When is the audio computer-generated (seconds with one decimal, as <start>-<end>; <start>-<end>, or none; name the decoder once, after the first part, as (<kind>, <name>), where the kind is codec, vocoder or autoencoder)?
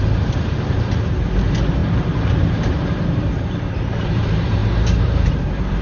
0.0-5.8 (vocoder, BigVGAN v2)